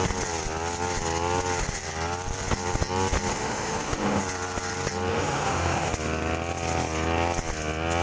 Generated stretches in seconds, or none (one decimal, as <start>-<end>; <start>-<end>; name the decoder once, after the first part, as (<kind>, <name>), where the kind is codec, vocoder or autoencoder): 3.3-4.2 (autoencoder, DAC-VAE); 5.1-5.9